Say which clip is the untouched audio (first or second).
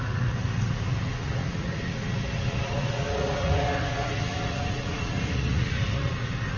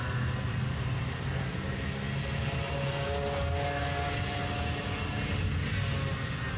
second